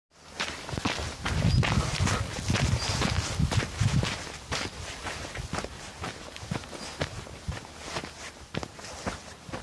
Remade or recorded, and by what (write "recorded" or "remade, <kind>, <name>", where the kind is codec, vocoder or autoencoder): recorded